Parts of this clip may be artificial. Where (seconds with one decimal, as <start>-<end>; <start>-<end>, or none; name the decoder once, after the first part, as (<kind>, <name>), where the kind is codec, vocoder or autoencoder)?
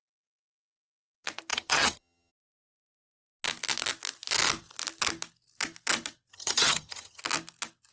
1.5-2.3 (vocoder, HiFi-GAN); 6.3-7.2